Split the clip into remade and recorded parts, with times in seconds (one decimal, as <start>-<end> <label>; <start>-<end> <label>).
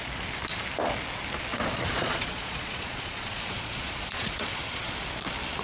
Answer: 0.0-1.5 recorded; 1.5-4.9 remade; 4.9-5.6 recorded